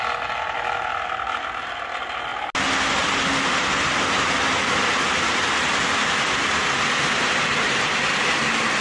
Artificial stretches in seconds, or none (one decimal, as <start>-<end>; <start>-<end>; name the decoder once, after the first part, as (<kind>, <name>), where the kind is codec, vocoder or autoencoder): none